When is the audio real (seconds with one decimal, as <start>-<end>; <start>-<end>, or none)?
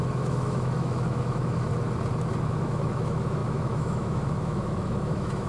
1.7-2.4